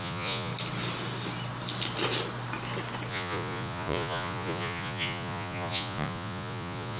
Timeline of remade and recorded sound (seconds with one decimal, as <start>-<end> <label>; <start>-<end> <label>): 0.0-0.5 remade; 0.5-3.1 recorded; 3.1-7.0 remade